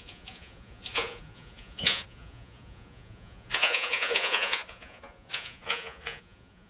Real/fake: fake